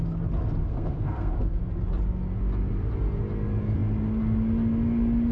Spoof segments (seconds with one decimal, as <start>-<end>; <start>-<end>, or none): 0.6-1.6

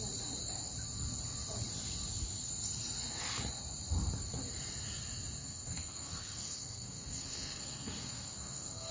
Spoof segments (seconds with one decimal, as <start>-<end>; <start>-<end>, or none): 5.4-8.9

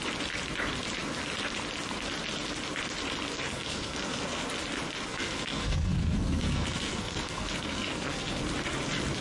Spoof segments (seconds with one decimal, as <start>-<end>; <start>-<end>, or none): 3.3-4.5; 5.1-8.4

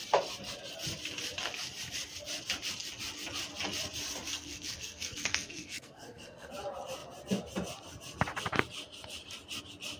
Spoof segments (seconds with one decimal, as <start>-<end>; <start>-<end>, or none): 4.3-6.5

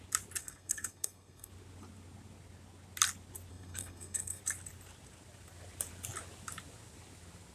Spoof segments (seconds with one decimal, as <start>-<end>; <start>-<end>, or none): 0.4-1.5; 3.5-4.4